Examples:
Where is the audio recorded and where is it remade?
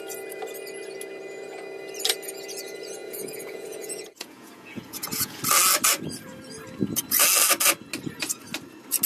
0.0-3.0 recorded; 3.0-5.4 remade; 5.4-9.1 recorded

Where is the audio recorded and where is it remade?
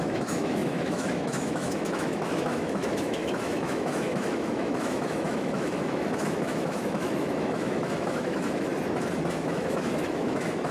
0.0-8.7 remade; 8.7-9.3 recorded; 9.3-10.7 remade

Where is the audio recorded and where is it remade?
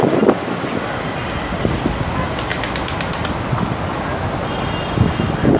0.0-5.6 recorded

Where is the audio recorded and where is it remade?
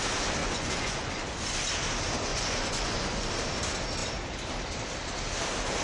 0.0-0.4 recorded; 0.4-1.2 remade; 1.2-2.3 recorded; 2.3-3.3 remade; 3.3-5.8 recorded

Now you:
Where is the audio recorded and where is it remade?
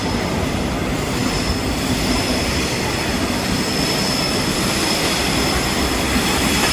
0.0-6.7 remade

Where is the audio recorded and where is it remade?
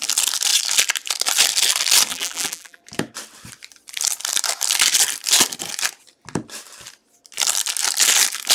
0.0-2.1 recorded; 2.1-2.8 remade; 2.8-8.5 recorded